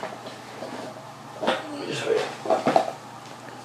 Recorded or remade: recorded